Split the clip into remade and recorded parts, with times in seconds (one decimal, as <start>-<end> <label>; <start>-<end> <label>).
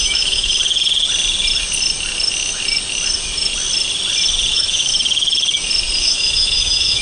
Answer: 0.0-0.5 remade; 0.5-4.5 recorded; 4.5-4.9 remade; 4.9-6.0 recorded; 6.0-7.0 remade